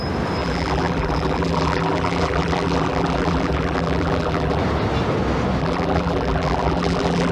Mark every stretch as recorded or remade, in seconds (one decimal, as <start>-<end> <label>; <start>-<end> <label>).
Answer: 0.0-0.4 recorded; 0.4-4.6 remade; 4.6-5.6 recorded; 5.6-7.3 remade